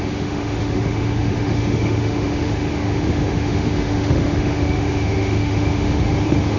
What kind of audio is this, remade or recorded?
remade